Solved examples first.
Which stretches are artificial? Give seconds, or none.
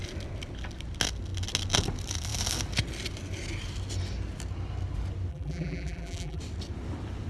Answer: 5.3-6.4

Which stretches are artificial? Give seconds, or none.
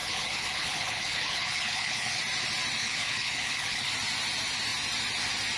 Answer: 0.0-2.2; 2.8-3.9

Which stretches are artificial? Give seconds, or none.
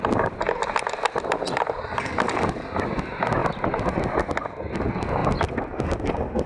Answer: none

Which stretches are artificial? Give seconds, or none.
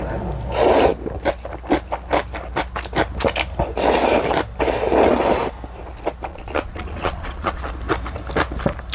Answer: 6.3-7.7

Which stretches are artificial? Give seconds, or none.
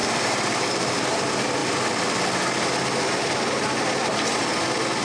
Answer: 0.0-1.2